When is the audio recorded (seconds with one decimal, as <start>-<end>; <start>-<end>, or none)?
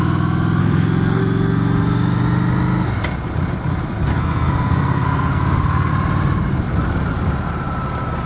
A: 0.0-0.6; 1.2-4.1; 5.9-8.3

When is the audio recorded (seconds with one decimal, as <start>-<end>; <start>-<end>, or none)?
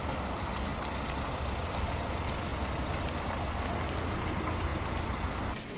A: 0.0-5.8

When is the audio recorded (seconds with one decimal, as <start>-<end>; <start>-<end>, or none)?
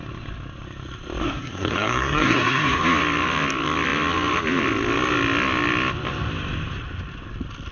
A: 0.0-1.2; 2.8-7.7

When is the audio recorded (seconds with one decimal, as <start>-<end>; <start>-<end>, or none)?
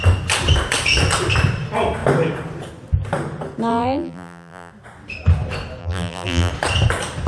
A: 0.0-3.7; 4.7-5.8; 6.5-7.3